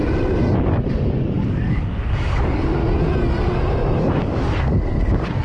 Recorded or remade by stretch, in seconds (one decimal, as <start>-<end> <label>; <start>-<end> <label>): 0.0-0.6 recorded; 0.6-2.8 remade; 2.8-4.0 recorded; 4.0-5.4 remade